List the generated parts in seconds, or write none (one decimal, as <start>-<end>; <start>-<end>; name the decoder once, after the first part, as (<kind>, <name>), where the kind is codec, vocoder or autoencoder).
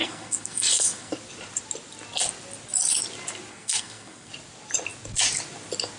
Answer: 0.0-1.1 (codec, SNAC); 3.5-4.3